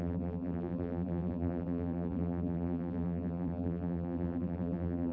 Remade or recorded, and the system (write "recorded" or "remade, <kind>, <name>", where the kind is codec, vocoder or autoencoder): remade, vocoder, BigVGAN v2